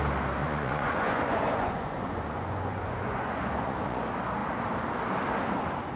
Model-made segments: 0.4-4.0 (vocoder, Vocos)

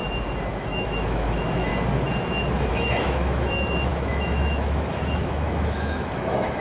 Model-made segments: 0.6-1.7 (autoencoder, DAC-VAE); 2.7-6.6

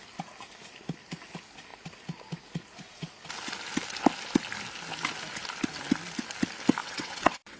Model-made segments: 6.8-7.6 (vocoder, WaveNeXt)

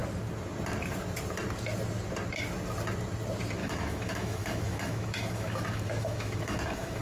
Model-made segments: 3.6-7.0 (autoencoder, DAC-VAE)

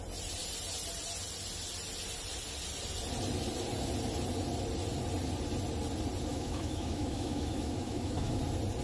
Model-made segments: 6.3-8.4 (autoencoder, DAC-VAE)